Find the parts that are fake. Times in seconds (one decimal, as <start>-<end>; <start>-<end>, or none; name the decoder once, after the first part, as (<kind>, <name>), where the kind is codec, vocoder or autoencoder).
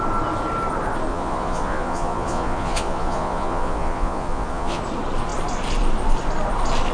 1.1-4.8 (vocoder, Vocos)